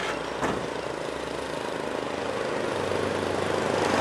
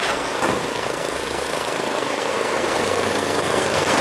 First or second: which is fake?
second